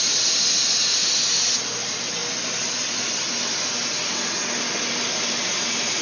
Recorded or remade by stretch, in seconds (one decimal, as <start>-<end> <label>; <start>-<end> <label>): 0.0-6.0 recorded